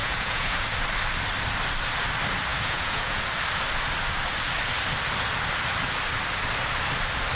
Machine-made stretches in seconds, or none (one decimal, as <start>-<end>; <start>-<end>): 0.0-0.6; 2.5-3.2